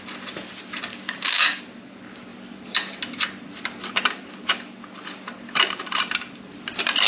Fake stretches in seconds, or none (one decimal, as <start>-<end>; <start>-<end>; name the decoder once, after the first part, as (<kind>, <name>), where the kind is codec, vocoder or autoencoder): 0.9-1.6 (codec, DAC)